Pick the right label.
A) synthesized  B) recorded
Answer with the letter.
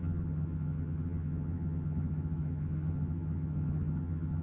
A